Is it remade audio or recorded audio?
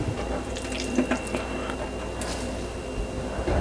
recorded